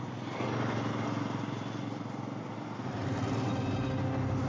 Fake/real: real